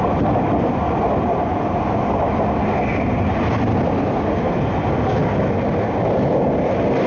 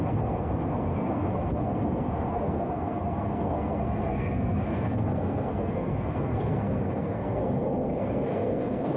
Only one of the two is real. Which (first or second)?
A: first